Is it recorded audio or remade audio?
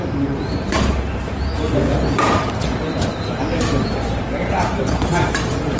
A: remade